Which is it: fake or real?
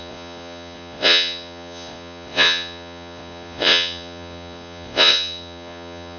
fake